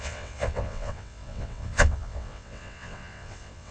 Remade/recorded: remade